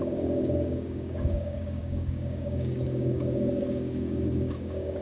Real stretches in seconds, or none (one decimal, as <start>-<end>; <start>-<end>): none